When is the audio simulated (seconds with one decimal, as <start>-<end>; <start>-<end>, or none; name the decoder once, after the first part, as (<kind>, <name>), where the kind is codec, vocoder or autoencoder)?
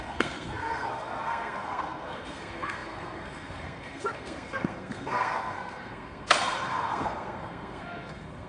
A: 0.0-8.5 (codec, SNAC)